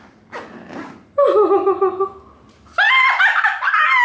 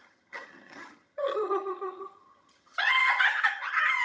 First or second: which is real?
first